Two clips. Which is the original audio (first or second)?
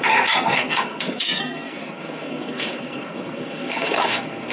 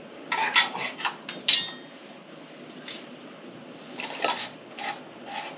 second